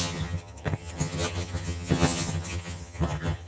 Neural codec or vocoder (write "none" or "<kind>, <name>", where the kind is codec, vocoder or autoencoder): vocoder, HiFi-GAN